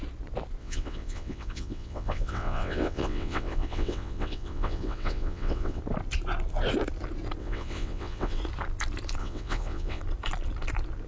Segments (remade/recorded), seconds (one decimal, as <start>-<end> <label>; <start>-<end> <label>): 0.0-0.6 recorded; 0.6-5.8 remade; 5.8-7.4 recorded; 7.4-8.4 remade; 8.4-9.2 recorded; 9.2-10.0 remade; 10.0-11.1 recorded